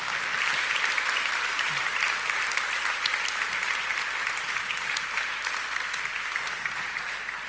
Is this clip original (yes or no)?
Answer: no